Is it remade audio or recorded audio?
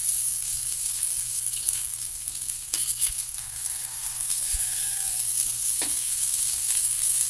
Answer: remade